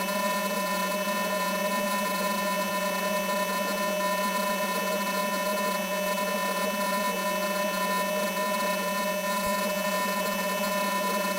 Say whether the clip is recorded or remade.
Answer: remade